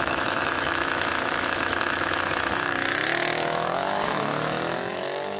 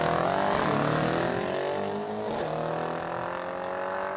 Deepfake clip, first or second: first